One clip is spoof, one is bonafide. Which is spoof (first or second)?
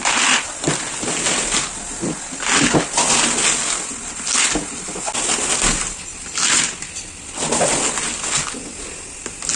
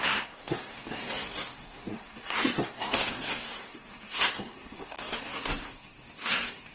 second